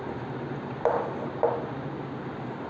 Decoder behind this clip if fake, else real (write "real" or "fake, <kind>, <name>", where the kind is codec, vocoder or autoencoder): real